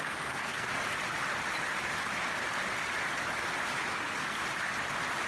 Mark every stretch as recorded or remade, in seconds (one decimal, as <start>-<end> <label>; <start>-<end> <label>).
0.0-0.7 remade; 0.7-3.9 recorded; 3.9-4.4 remade; 4.4-5.3 recorded